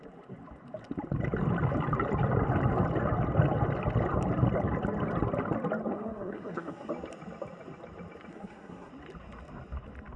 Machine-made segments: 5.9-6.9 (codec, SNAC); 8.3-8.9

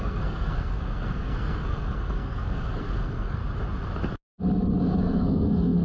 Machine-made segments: 0.0-3.4 (codec, SNAC); 5.0-5.8

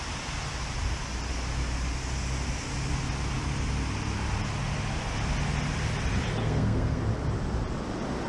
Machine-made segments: 6.4-7.0 (codec, SNAC)

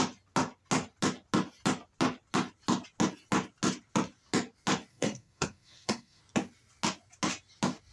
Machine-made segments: 4.9-6.2 (codec, SNAC)

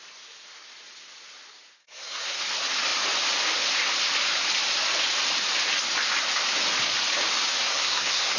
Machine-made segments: 1.8-2.4 (codec, SNAC); 7.7-8.4

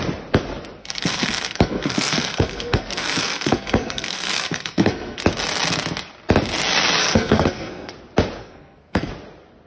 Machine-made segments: 0.8-5.2 (codec, SNAC); 7.0-7.9; 8.4-9.1